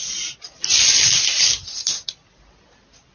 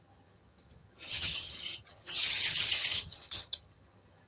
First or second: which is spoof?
second